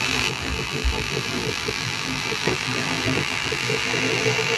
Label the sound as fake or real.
fake